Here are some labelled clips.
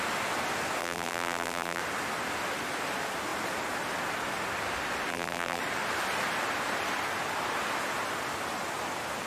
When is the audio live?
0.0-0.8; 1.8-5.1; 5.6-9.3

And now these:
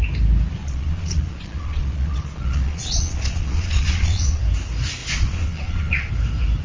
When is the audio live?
0.0-0.6; 4.4-5.0; 6.1-6.6

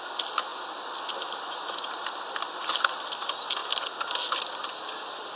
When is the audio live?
0.0-5.4

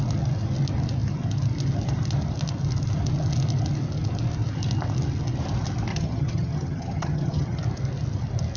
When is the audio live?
0.0-5.9; 7.6-8.6

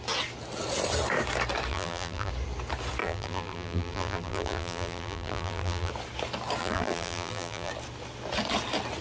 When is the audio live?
0.0-1.7; 2.3-3.0; 5.9-6.6; 7.7-9.0

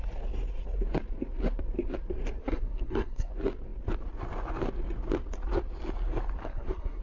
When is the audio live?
0.0-2.4; 3.3-6.4

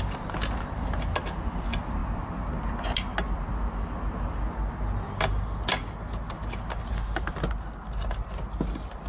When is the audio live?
0.0-9.1